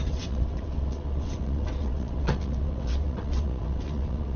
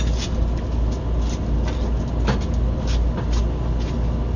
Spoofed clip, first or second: first